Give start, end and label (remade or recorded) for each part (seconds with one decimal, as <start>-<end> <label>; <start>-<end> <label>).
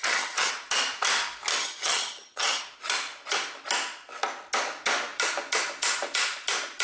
0.0-0.5 remade; 0.5-1.6 recorded; 1.6-2.6 remade; 2.6-6.8 recorded